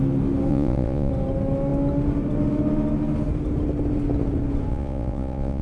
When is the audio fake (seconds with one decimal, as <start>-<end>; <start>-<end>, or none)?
0.5-1.1; 4.7-5.6